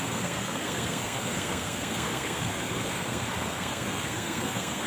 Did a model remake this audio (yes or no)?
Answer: yes